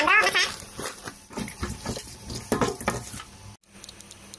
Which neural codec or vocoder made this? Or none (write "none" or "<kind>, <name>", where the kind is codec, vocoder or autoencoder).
none